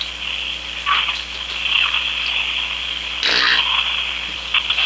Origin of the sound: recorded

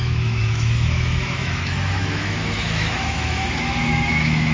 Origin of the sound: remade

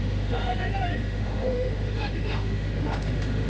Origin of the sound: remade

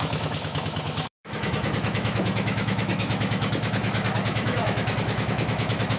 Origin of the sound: remade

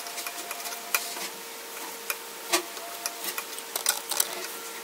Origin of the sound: recorded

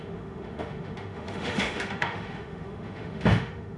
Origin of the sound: remade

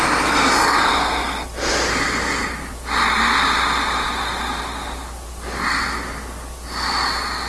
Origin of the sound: recorded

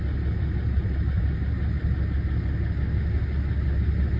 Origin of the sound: recorded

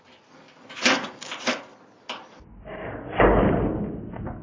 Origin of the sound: recorded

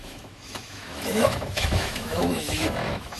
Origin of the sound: remade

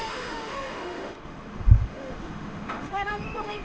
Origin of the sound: remade